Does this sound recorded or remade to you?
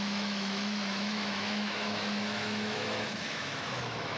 remade